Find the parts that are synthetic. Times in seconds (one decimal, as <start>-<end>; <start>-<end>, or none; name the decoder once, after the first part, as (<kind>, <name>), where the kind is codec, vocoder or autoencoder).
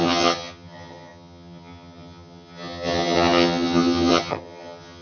0.0-5.0 (vocoder, HiFi-GAN)